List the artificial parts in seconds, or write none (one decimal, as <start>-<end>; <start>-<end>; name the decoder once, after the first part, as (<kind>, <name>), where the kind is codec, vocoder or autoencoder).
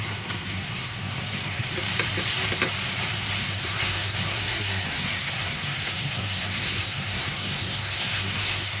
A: 0.0-1.7 (codec, SNAC); 3.4-8.8